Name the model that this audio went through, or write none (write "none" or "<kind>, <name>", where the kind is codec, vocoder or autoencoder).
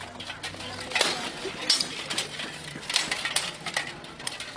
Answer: none